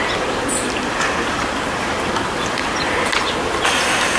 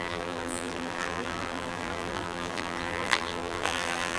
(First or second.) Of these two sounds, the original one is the first